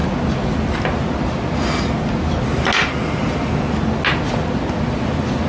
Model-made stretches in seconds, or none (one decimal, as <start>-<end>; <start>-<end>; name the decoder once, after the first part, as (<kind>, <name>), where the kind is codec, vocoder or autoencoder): none